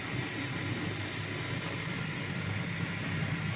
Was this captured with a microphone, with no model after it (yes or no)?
yes